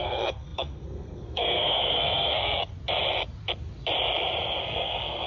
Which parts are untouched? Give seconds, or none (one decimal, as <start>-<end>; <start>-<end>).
2.7-4.6